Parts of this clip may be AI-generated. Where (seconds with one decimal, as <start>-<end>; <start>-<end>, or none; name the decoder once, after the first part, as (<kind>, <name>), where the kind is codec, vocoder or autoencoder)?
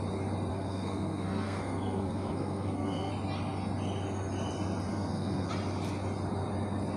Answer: 0.5-3.1 (codec, SNAC); 4.9-5.5